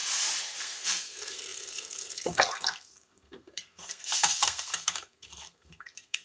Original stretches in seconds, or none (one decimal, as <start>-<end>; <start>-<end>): 0.0-0.6